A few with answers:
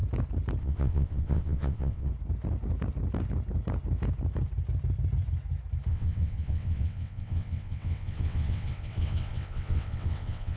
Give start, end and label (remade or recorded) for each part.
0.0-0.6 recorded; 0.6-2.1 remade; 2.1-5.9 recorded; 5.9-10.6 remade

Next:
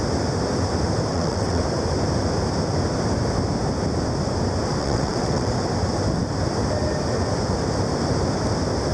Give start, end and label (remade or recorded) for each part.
0.0-1.1 recorded; 1.1-1.6 remade; 1.6-4.8 recorded; 4.8-5.5 remade; 5.5-8.9 recorded